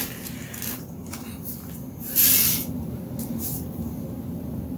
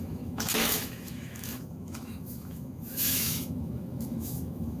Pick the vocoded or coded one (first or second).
second